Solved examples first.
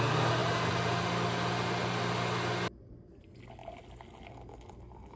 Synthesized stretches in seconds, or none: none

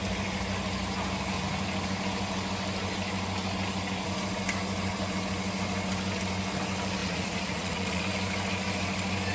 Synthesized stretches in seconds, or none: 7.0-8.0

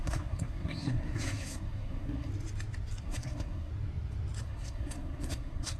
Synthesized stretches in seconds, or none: 0.0-2.3; 3.0-3.7; 4.4-5.8

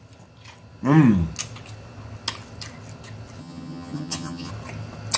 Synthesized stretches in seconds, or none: 3.4-4.5